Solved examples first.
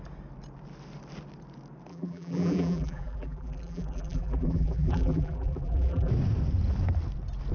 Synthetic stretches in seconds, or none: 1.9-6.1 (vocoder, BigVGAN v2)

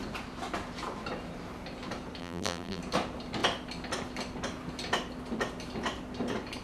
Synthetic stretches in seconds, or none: 2.2-2.8 (vocoder, BigVGAN v2)

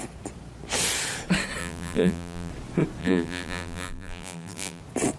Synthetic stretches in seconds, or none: 1.6-2.5 (vocoder, BigVGAN v2); 3.0-4.8

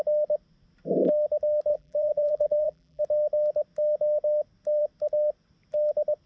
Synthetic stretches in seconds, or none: 1.7-3.0 (vocoder, BigVGAN v2)

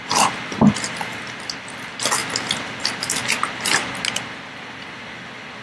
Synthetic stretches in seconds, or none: none

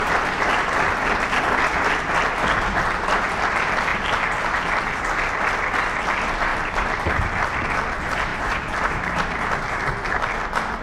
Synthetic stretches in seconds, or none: 6.5-7.1 (vocoder, BigVGAN v2); 8.3-9.5

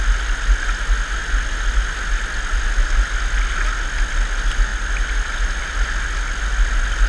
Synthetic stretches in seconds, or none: 4.7-5.7 (vocoder, BigVGAN v2)

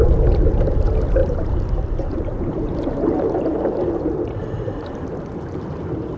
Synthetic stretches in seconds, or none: 1.2-4.9 (vocoder, BigVGAN v2)